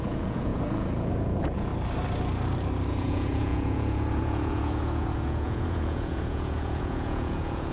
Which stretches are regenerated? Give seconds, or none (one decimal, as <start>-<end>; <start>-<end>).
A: 0.0-1.7; 2.9-7.7